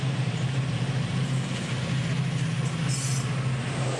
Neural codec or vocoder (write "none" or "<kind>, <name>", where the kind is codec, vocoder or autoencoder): none